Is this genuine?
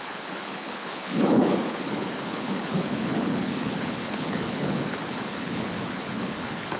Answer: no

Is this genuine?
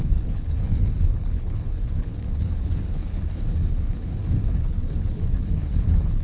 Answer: no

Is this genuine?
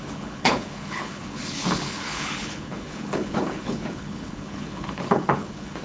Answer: no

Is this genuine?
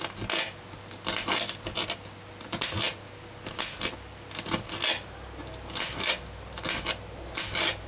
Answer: yes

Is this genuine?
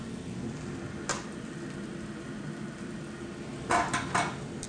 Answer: yes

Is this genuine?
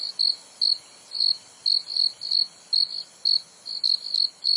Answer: yes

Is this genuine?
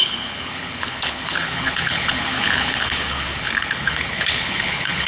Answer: no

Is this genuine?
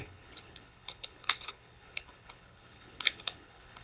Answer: no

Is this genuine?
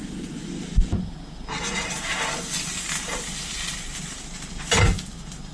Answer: yes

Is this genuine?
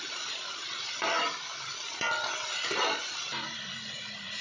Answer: yes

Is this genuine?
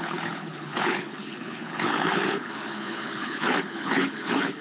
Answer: no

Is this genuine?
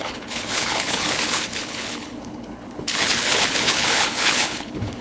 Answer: no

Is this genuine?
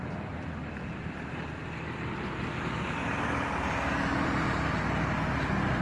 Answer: yes